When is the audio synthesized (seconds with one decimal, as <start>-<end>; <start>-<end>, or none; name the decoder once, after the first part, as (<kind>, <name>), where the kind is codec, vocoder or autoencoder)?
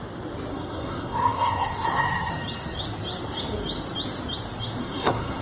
0.5-2.3 (codec, SNAC); 4.8-5.4